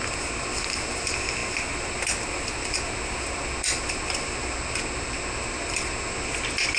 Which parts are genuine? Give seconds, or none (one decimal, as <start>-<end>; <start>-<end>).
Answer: 0.0-6.8